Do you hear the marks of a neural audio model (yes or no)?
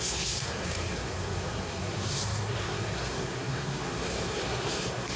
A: yes